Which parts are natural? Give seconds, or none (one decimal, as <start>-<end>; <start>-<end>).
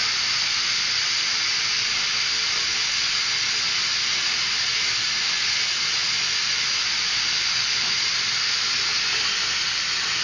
0.0-10.2